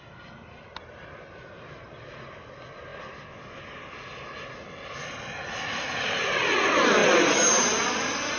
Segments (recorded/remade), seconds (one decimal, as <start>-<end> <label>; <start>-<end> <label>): 0.0-8.4 recorded